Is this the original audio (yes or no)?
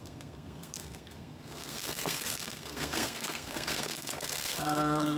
no